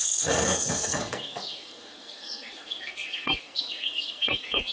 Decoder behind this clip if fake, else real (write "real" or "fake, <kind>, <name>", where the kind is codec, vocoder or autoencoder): fake, codec, SNAC